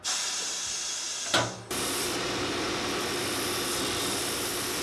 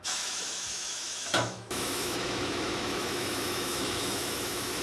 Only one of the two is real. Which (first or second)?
first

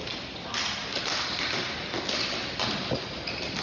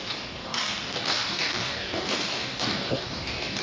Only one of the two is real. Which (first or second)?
first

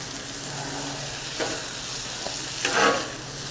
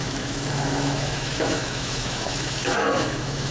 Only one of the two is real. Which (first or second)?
first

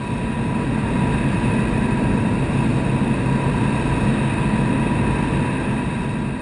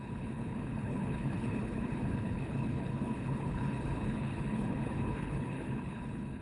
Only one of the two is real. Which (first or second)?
first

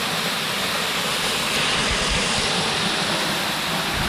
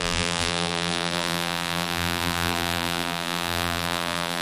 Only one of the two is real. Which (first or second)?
first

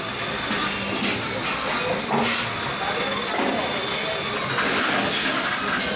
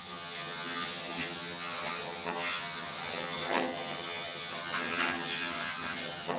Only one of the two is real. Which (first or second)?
first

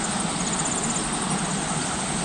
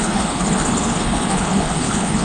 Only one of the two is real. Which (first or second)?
first